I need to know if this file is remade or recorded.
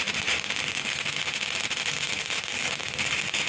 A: recorded